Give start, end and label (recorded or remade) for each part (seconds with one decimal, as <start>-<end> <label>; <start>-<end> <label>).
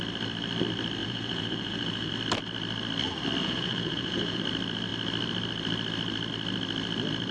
0.0-1.0 recorded; 1.0-2.1 remade; 2.1-3.4 recorded; 3.4-4.4 remade; 4.4-7.3 recorded